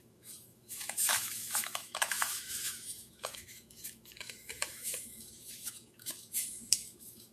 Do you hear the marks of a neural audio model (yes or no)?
yes